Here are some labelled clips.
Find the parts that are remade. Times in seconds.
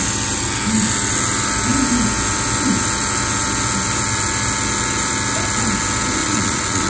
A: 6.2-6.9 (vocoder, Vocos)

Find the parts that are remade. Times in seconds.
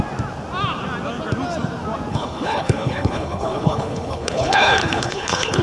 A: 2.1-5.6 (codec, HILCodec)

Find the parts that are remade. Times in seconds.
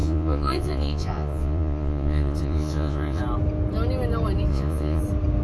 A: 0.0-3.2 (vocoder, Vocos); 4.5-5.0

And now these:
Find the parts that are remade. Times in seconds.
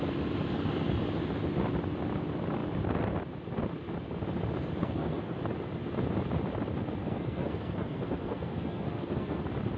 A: 4.8-5.4 (codec, SNAC); 7.0-9.4